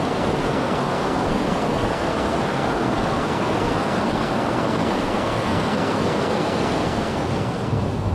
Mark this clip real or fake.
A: fake